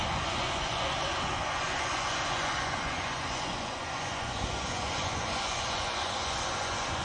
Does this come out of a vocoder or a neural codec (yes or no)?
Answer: yes